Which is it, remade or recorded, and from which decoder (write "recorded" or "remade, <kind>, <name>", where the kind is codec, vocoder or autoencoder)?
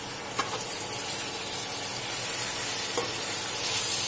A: recorded